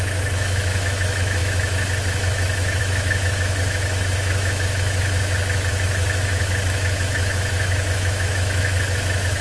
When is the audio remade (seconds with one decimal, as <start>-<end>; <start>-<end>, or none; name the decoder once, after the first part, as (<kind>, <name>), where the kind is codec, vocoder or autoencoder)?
0.0-9.4 (autoencoder, DAC-VAE)

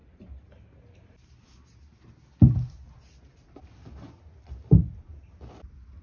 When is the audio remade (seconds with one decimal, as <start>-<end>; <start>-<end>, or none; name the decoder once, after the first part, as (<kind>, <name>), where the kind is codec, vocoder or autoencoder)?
none

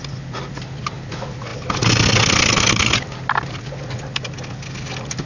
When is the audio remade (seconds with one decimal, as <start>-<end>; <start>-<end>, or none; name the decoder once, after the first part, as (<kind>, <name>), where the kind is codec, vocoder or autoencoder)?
none

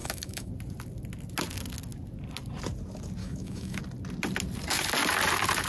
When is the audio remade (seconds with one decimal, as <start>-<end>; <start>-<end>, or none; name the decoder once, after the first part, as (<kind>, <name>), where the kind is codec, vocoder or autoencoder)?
0.0-0.5 (autoencoder, DAC-VAE); 3.2-3.8